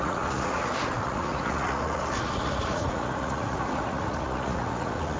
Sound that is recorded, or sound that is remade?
remade